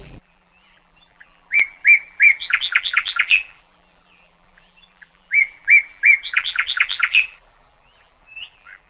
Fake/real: fake